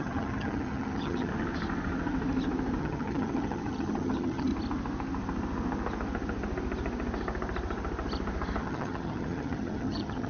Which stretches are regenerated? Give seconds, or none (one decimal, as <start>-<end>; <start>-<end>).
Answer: 0.0-1.3; 2.8-4.5; 8.6-10.3